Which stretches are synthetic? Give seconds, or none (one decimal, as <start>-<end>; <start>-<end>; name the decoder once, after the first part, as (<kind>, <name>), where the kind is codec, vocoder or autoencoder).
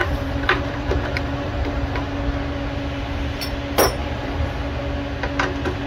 0.0-2.1 (vocoder, BigVGAN v2); 4.0-4.5